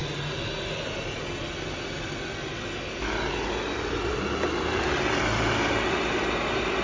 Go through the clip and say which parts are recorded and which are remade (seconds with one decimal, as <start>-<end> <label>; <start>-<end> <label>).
0.0-6.8 recorded